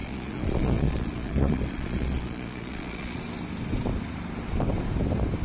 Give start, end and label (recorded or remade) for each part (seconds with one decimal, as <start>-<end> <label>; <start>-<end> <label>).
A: 0.0-3.2 remade; 3.2-5.4 recorded